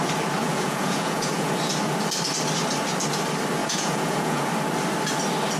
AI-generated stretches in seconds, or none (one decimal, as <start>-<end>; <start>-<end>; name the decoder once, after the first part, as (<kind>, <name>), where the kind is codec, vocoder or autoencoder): 0.4-1.5 (vocoder, Vocos); 3.6-4.4